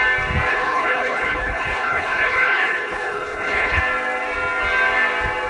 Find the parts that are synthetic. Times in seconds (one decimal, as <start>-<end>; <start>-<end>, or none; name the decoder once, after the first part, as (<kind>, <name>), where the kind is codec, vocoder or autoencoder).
0.5-3.8 (codec, HILCodec)